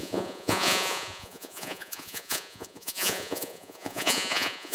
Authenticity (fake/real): fake